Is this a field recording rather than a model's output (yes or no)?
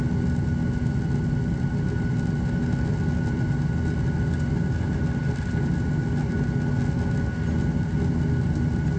yes